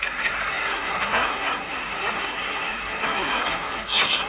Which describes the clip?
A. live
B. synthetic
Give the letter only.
B